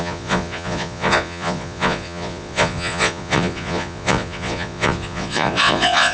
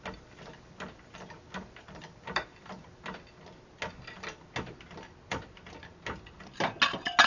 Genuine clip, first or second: second